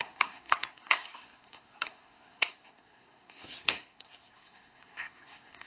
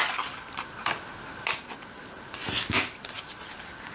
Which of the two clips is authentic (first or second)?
second